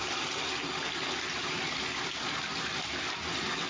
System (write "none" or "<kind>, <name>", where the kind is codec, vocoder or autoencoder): none